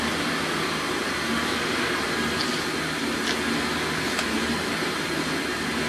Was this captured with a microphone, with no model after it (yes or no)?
yes